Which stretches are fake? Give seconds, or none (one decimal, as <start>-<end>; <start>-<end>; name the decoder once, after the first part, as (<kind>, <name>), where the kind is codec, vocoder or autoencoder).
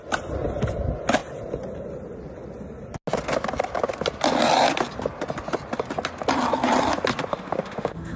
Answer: 7.3-8.2 (autoencoder, DAC-VAE)